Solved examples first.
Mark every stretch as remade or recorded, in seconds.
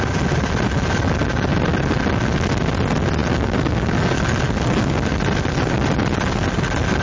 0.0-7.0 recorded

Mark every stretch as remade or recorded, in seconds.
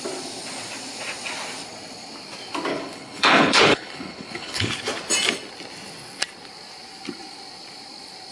0.0-2.7 recorded; 2.7-4.7 remade; 4.7-8.3 recorded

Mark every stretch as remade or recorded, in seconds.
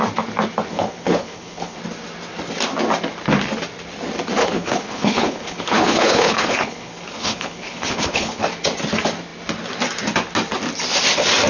0.0-0.7 recorded; 0.7-1.8 remade; 1.8-4.4 recorded; 4.4-8.4 remade; 8.4-11.5 recorded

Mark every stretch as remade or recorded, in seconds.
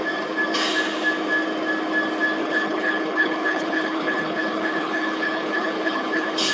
0.0-2.4 recorded; 2.4-6.5 remade